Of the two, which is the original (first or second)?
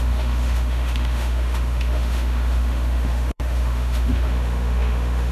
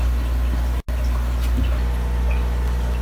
second